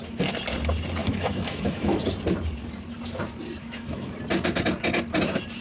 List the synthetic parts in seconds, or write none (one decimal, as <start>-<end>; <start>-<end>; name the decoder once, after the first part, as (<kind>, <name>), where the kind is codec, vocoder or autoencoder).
1.0-2.0 (autoencoder, DAC-VAE); 3.6-4.1